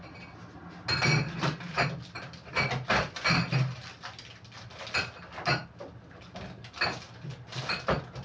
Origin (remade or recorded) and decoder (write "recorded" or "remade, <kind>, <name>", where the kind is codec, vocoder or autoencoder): recorded